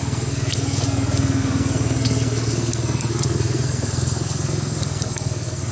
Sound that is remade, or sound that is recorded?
remade